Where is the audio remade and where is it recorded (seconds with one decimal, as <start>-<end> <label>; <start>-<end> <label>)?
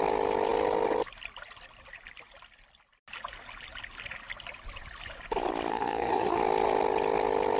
0.0-5.7 recorded; 5.7-6.4 remade; 6.4-7.6 recorded